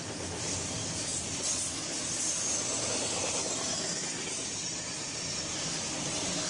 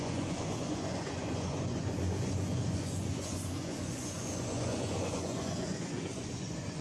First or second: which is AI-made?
second